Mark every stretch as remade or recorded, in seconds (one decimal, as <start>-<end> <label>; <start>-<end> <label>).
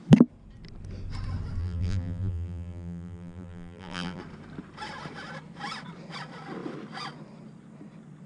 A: 0.0-1.6 recorded; 1.6-4.2 remade; 4.2-8.3 recorded